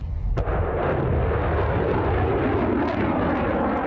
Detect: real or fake real